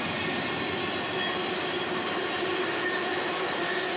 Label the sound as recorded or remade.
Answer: recorded